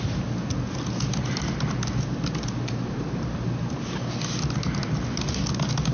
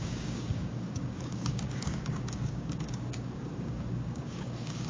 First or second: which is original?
first